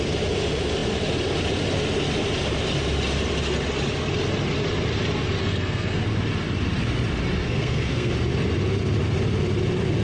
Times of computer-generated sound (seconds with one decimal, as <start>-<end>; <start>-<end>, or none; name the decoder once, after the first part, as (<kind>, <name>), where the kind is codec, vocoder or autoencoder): 5.4-6.0 (codec, SNAC); 7.4-8.1